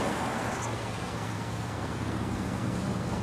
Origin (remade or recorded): remade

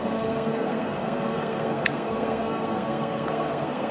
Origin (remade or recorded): remade